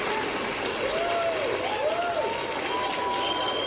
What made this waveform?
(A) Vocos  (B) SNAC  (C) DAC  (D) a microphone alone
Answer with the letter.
D